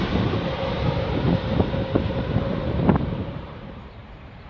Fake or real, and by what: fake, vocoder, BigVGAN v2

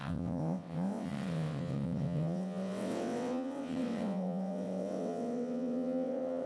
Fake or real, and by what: fake, vocoder, WaveNeXt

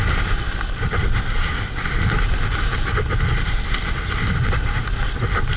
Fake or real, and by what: real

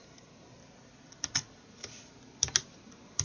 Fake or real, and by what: real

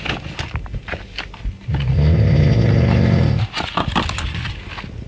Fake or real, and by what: real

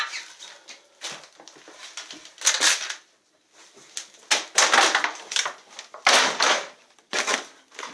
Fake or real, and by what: real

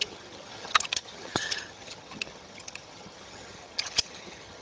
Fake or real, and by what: fake, vocoder, HiFi-GAN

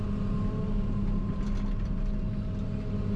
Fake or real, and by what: real